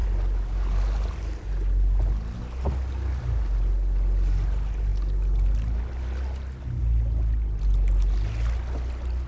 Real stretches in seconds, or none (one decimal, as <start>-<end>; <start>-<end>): 0.0-9.3